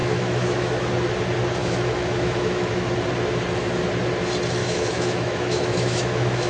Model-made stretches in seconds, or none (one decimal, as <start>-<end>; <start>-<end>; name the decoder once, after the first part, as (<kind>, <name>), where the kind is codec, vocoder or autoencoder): 0.0-0.9 (autoencoder, DAC-VAE); 1.6-2.9; 4.6-6.5